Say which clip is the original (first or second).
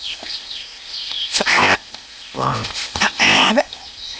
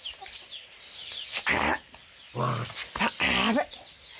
second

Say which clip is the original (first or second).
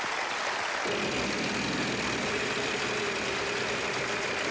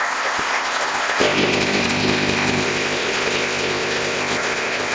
first